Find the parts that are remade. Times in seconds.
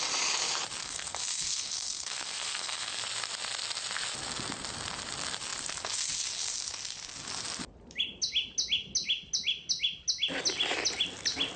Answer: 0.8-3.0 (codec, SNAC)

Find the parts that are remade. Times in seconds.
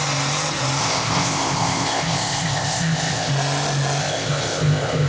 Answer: 0.8-3.3 (codec, ZipCodec); 4.0-5.1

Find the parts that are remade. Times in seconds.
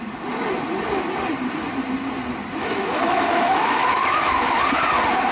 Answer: 2.6-4.4 (autoencoder, DAC-VAE)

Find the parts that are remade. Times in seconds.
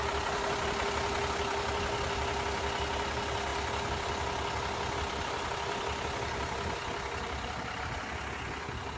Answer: none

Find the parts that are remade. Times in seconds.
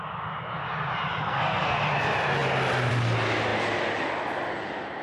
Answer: 1.2-1.8 (codec, SNAC)